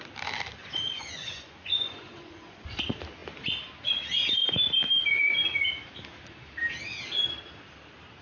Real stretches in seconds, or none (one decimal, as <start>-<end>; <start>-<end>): 0.0-0.6; 2.8-8.2